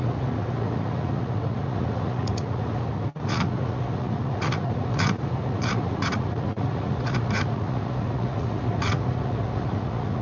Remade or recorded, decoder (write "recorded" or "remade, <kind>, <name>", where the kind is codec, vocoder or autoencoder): remade, vocoder, Vocos